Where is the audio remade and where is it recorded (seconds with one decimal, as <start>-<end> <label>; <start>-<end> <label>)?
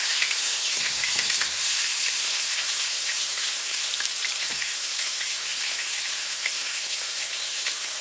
0.0-3.9 remade; 3.9-4.4 recorded; 4.4-8.0 remade